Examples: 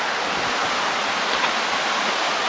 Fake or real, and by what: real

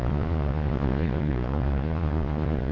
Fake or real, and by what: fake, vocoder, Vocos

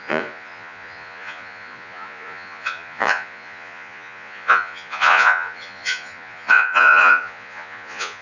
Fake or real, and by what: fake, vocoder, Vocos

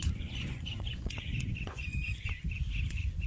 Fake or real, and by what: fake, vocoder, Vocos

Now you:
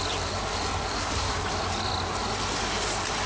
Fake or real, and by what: real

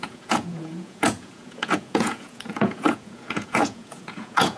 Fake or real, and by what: fake, vocoder, Vocos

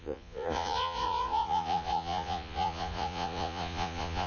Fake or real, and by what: fake, vocoder, Vocos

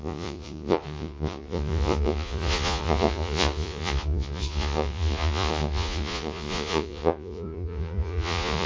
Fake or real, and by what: fake, vocoder, Vocos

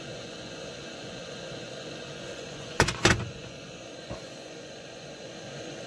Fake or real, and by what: fake, vocoder, Vocos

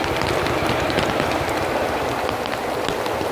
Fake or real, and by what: real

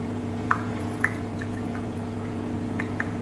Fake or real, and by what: fake, vocoder, Vocos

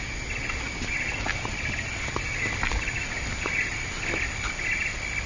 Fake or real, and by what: real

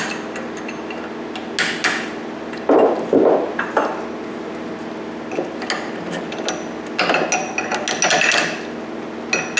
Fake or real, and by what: real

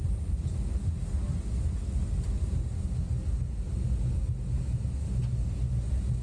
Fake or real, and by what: real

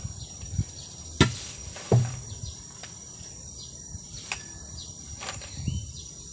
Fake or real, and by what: real